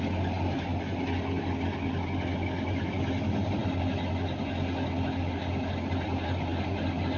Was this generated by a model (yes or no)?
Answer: no